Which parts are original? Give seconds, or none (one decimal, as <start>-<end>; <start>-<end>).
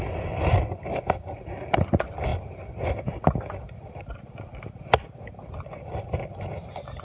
0.0-7.0